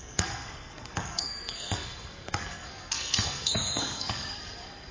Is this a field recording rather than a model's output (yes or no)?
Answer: no